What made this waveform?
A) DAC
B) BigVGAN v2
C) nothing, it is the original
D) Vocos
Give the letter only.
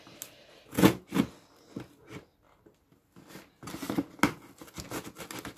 C